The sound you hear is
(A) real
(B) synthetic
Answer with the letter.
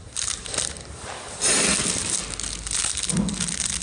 A